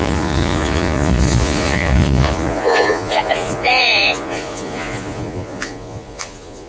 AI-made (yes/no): yes